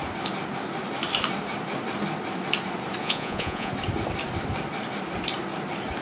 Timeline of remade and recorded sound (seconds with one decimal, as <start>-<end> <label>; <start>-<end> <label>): 0.0-3.0 recorded; 3.0-3.7 remade; 3.7-6.0 recorded